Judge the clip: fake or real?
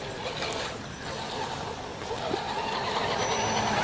fake